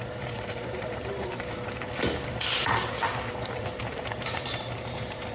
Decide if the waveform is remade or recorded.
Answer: remade